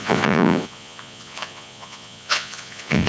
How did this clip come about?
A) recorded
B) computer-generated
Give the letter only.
B